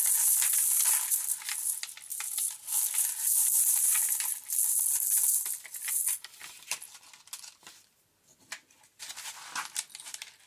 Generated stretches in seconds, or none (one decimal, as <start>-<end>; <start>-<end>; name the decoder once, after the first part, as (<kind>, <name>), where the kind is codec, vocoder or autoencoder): none